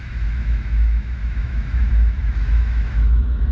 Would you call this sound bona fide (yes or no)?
no